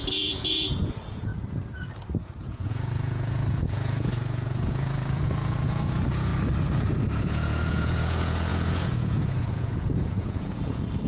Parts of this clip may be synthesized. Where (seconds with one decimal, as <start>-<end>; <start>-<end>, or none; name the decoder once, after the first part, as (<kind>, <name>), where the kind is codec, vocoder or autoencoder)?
0.0-1.3 (vocoder, Vocos); 2.4-6.3; 7.2-11.1